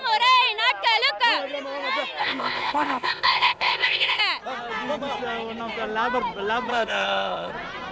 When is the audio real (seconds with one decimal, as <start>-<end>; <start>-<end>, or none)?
0.0-2.2; 4.2-6.7; 7.5-7.9